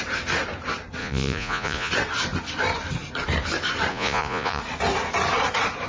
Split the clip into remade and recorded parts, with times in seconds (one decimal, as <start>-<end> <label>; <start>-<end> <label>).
0.0-1.0 recorded; 1.0-1.9 remade; 1.9-3.9 recorded; 3.9-4.6 remade; 4.6-5.9 recorded